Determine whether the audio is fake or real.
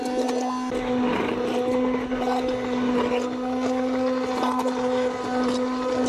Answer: real